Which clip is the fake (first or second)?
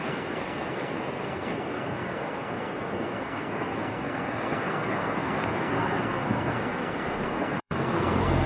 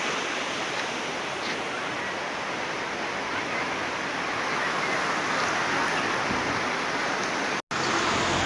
first